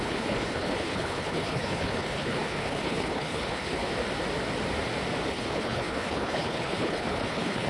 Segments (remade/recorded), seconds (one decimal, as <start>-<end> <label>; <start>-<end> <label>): 0.0-3.9 remade; 3.9-5.3 recorded; 5.3-7.7 remade